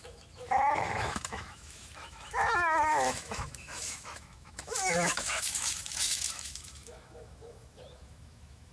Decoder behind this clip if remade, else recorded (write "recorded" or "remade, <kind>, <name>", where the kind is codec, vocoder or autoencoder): remade, autoencoder, DAC-VAE